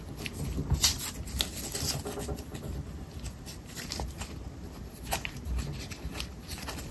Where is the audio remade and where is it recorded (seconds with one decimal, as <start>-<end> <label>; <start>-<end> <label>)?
0.0-6.9 recorded